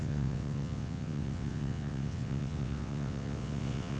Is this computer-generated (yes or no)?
yes